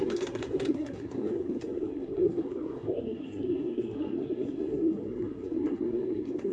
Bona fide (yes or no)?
no